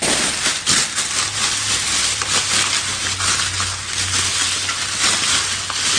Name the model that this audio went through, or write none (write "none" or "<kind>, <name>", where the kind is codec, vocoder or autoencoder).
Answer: none